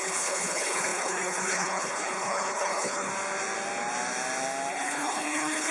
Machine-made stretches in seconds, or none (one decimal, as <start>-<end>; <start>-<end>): 0.0-3.1; 4.7-5.7